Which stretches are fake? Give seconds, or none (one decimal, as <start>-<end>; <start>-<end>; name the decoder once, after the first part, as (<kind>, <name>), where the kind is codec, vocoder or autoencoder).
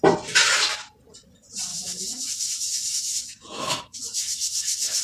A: 1.7-5.0 (autoencoder, DAC-VAE)